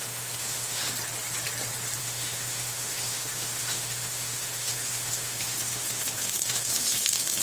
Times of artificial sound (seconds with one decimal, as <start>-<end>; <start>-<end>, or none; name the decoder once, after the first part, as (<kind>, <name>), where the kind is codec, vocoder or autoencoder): 0.0-0.8 (autoencoder, DAC-VAE); 2.0-7.4